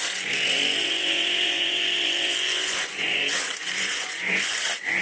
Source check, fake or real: fake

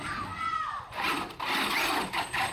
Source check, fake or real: real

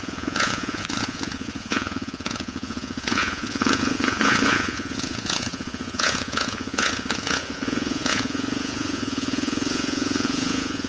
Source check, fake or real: fake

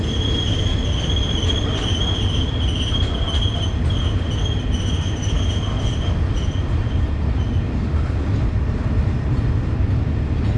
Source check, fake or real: real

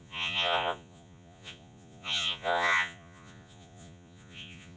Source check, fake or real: fake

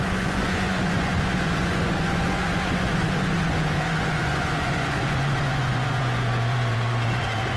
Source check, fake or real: fake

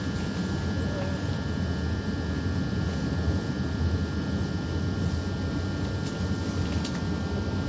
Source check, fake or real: real